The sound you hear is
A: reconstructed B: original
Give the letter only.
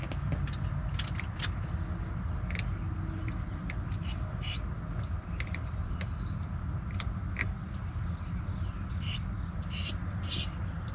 B